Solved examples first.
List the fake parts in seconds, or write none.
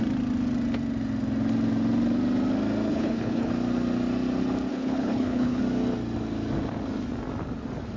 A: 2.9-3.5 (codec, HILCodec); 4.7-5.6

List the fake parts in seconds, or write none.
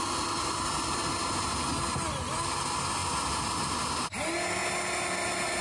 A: none